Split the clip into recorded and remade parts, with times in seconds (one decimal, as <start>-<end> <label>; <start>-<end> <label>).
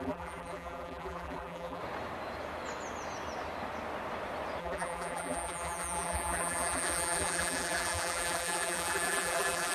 0.0-1.8 remade; 1.8-4.6 recorded; 4.6-9.7 remade